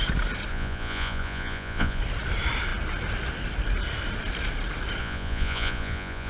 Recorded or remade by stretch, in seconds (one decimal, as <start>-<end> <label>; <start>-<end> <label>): 0.0-0.5 recorded; 0.5-2.0 remade; 2.0-5.0 recorded; 5.0-6.3 remade